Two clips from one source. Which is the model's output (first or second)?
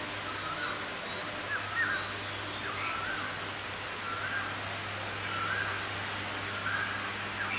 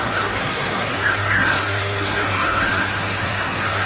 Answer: second